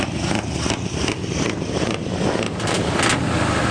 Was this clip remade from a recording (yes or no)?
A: yes